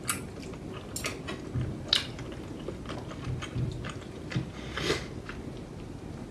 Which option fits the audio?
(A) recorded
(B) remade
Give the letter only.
A